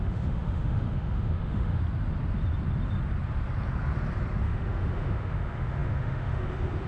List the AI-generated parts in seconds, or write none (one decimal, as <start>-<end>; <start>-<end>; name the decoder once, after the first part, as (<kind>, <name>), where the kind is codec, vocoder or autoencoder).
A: 0.0-1.8 (autoencoder, DAC-VAE); 4.4-6.9